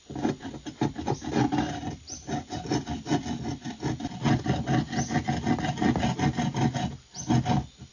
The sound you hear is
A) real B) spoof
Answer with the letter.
A